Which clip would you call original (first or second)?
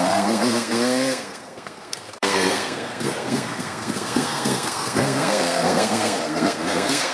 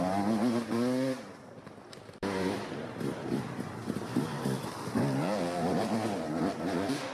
second